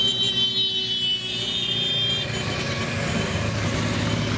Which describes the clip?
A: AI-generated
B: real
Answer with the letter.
B